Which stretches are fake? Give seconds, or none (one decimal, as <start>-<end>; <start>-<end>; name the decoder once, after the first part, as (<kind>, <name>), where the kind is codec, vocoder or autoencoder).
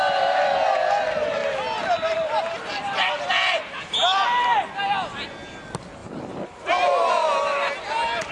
none